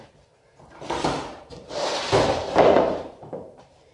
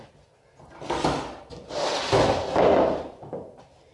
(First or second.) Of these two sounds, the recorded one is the second